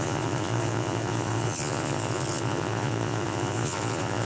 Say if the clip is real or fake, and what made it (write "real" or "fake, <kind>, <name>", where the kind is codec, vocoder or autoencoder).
fake, vocoder, Vocos